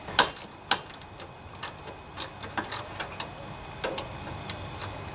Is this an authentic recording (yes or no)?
yes